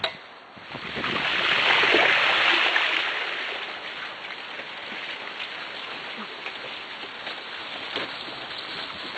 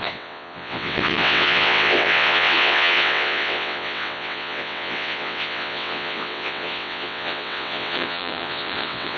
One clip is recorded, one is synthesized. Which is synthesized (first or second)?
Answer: second